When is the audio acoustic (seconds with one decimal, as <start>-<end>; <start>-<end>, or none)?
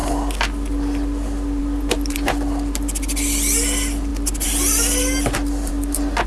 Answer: 0.0-6.3